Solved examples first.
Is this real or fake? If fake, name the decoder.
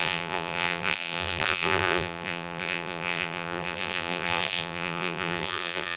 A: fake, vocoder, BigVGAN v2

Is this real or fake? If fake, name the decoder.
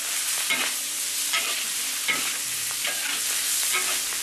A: real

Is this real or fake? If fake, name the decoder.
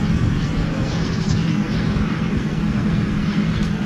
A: fake, codec, SNAC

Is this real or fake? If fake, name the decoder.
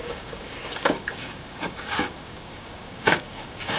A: fake, codec, DAC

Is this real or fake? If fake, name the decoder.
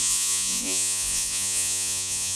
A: fake, vocoder, Vocos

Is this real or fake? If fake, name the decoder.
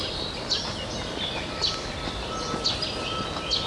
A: real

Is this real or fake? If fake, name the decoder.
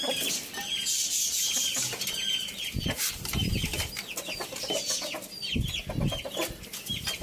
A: real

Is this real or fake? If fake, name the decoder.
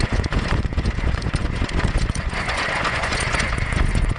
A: fake, vocoder, Vocos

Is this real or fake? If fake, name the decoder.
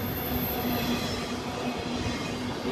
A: real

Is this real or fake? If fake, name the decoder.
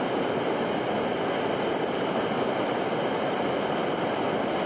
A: real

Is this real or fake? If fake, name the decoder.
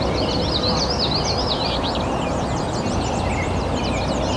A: real